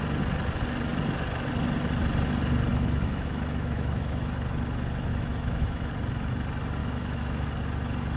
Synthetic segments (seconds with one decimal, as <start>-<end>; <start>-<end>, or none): 2.7-4.3; 5.1-5.9; 6.8-7.5

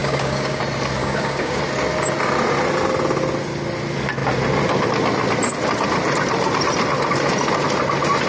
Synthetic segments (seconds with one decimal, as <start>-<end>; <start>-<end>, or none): 0.0-0.6; 1.0-1.6

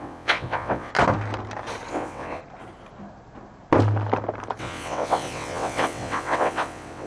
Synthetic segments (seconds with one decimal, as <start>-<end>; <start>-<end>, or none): 0.0-0.9; 1.9-2.4; 4.6-7.1

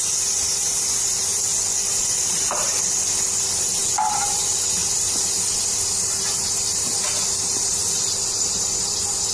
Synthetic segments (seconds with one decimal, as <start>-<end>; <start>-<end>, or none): 0.0-1.5; 2.0-2.7; 3.4-9.3